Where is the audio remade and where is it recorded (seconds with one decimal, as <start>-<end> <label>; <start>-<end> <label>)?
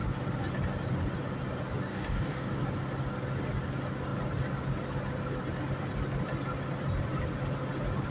0.0-1.9 recorded; 1.9-2.6 remade; 2.6-8.1 recorded